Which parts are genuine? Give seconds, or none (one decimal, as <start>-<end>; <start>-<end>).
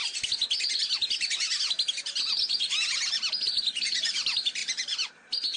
0.0-5.6